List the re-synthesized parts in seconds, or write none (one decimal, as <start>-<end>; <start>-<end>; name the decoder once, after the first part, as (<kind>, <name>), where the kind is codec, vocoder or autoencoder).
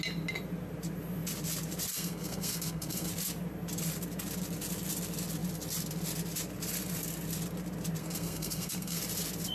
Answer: 1.9-3.1 (codec, SNAC); 8.0-9.0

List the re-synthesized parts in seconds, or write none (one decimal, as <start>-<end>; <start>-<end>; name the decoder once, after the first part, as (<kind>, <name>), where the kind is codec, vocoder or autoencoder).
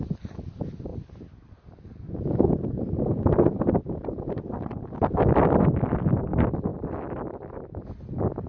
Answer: none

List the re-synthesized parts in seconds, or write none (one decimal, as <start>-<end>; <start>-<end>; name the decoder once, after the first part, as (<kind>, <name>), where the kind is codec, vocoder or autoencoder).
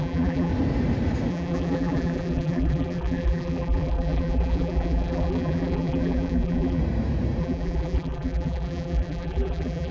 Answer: 0.0-0.5 (vocoder, BigVGAN v2); 1.3-6.8; 7.4-9.9